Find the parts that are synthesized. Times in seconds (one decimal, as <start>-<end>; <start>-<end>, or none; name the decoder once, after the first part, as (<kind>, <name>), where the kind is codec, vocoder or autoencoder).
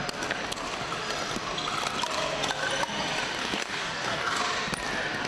3.4-4.4 (codec, DAC)